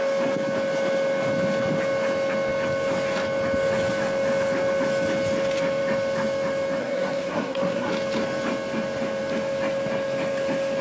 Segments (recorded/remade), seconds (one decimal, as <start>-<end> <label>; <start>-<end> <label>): 0.0-6.8 recorded; 6.8-7.9 remade; 7.9-10.8 recorded